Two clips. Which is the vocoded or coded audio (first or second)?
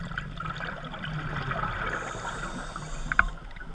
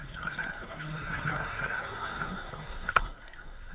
second